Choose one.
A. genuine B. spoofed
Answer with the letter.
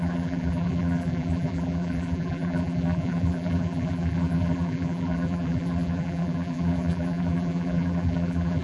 B